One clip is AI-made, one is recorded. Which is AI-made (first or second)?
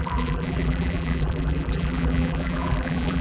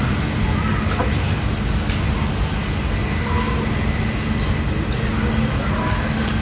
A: first